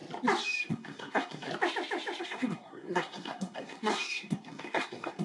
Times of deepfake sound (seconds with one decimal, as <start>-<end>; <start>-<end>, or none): 0.7-1.5; 2.2-5.2